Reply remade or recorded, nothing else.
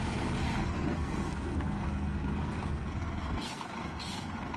remade